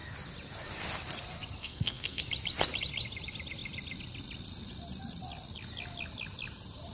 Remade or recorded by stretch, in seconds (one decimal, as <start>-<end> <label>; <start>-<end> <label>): 0.0-1.6 recorded; 1.6-2.2 remade; 2.2-6.9 recorded